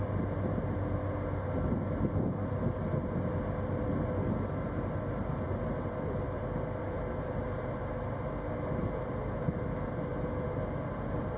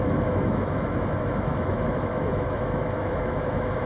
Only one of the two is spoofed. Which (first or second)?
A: second